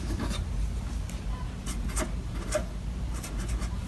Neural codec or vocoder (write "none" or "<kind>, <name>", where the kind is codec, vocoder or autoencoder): none